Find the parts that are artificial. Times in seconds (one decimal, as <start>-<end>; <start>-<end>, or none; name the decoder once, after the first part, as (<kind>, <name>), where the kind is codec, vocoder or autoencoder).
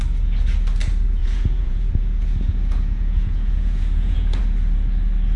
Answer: 1.2-4.4 (vocoder, Vocos)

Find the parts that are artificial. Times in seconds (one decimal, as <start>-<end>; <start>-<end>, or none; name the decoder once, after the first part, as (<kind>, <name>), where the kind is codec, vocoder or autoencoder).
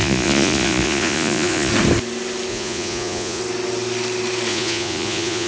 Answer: 0.0-1.7 (vocoder, Vocos); 2.5-3.4; 4.5-5.5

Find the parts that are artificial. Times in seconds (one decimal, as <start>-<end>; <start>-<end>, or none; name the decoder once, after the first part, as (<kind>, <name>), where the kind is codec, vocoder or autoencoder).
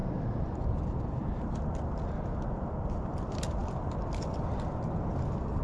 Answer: none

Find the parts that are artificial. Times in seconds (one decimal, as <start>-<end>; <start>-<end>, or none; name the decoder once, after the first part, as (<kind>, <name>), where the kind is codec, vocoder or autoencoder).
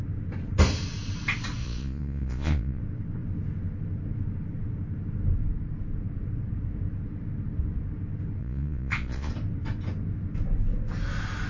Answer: 1.6-2.8 (vocoder, Vocos); 8.4-9.3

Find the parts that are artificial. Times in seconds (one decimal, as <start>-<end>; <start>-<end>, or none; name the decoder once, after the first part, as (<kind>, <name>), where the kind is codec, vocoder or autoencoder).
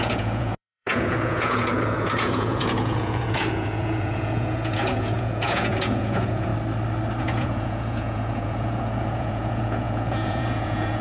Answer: 0.0-6.5 (vocoder, Vocos); 7.2-11.0